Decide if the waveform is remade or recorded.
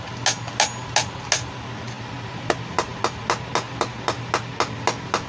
recorded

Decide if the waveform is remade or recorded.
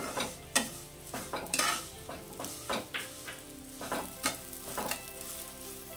recorded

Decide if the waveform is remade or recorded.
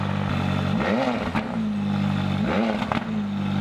recorded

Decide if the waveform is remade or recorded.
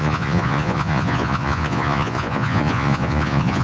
remade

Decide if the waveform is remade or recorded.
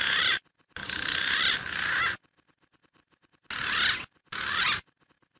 recorded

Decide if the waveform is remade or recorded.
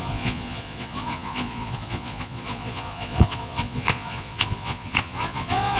remade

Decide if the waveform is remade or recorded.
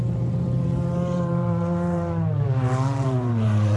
remade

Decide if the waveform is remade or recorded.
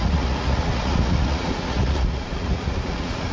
remade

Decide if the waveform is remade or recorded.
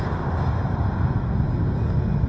recorded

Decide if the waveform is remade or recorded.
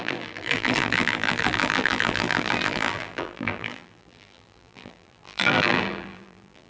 remade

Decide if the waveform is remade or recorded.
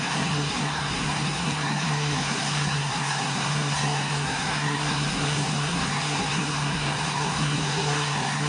remade